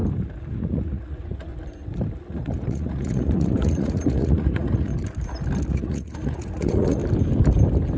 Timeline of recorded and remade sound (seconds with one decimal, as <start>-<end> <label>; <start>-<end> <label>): 0.0-0.5 recorded; 0.5-1.5 remade; 1.5-2.3 recorded; 2.3-4.9 remade; 4.9-5.7 recorded; 5.7-7.0 remade; 7.0-8.0 recorded